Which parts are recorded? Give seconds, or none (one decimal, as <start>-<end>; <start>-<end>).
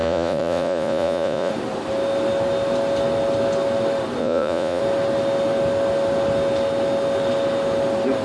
1.5-4.2; 4.8-8.2